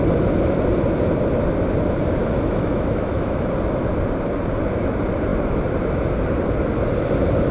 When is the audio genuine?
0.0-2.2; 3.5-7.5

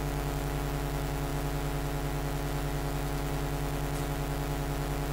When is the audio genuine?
0.0-5.1

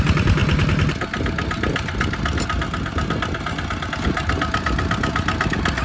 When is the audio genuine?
0.0-5.8

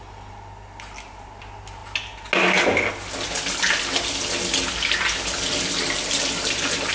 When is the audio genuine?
0.0-6.9

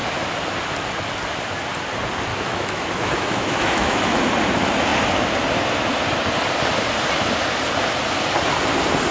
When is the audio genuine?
0.0-2.3; 4.2-9.1

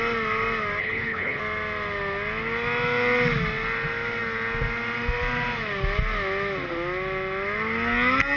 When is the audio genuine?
0.0-0.8; 1.4-8.4